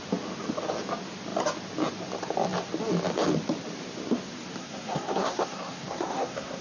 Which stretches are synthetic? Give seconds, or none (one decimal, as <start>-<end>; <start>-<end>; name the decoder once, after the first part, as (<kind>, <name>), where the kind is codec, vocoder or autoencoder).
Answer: 4.6-6.6 (codec, SNAC)